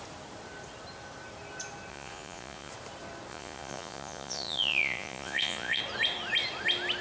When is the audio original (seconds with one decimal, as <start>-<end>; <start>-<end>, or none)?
0.0-1.9; 2.7-3.3; 5.8-7.0